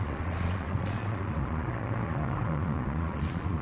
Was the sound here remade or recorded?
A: remade